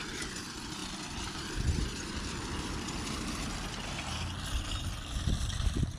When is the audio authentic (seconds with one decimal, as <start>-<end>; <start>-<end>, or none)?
0.0-6.0